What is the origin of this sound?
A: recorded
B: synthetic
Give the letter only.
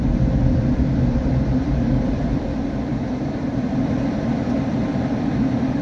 B